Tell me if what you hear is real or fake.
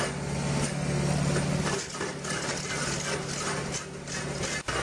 real